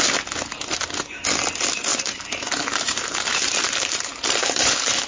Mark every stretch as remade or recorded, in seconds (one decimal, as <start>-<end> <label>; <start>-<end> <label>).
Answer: 0.0-1.9 recorded; 1.9-5.1 remade